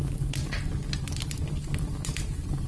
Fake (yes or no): no